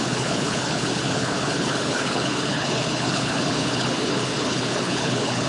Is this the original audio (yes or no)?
no